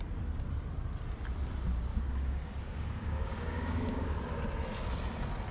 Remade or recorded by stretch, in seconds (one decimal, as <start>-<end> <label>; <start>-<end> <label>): 0.0-1.9 recorded; 1.9-4.2 remade; 4.2-5.5 recorded